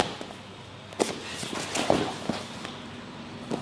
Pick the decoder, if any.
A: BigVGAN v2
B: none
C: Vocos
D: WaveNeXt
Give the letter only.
B